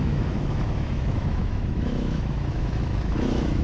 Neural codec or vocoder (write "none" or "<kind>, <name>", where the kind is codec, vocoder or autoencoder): autoencoder, DAC-VAE